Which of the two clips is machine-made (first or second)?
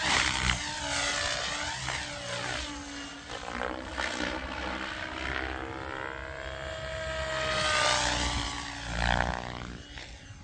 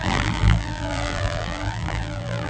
second